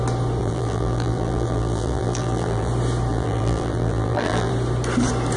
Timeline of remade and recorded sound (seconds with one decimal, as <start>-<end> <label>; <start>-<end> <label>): 0.0-0.4 recorded; 0.4-2.7 remade; 2.7-3.1 recorded; 3.1-4.5 remade; 4.5-5.4 recorded